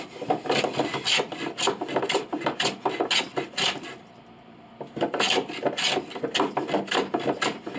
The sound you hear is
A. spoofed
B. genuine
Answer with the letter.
B